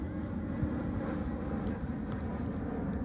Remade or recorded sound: recorded